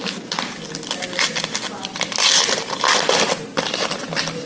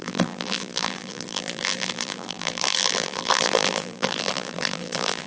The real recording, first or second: first